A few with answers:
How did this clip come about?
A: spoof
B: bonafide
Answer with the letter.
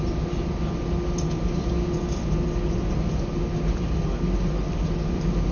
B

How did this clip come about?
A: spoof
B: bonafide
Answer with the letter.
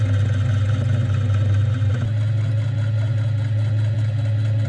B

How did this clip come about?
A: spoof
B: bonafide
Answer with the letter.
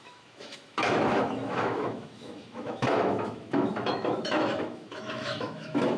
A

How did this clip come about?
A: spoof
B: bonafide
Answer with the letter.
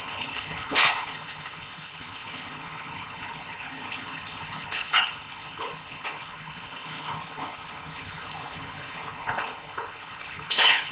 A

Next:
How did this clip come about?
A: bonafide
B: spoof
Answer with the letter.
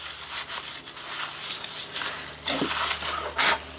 A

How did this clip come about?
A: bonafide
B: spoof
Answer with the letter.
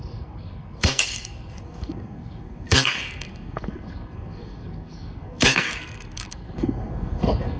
B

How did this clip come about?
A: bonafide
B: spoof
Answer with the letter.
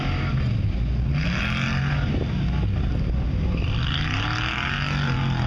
A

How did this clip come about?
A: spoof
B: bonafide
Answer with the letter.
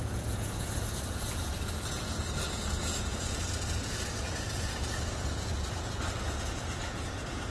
A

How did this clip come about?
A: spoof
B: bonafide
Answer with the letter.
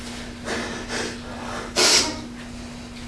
B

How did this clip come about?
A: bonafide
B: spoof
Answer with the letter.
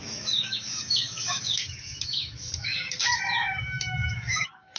B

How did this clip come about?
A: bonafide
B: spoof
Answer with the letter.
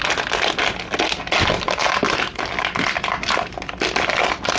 A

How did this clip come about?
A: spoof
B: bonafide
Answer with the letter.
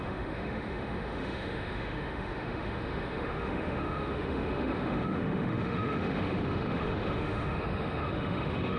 A